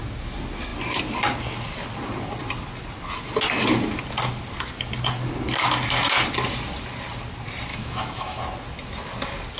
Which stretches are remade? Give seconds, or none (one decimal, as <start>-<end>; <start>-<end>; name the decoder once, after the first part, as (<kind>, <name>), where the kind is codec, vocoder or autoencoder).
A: 7.7-8.4 (autoencoder, DAC-VAE)